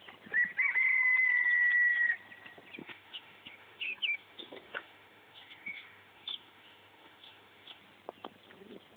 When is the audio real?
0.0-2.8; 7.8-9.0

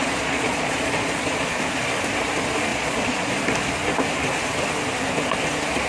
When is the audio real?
1.6-2.7; 3.3-5.9

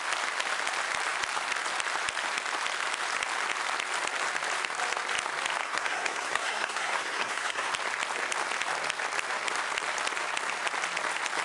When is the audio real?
0.0-5.6; 7.7-11.4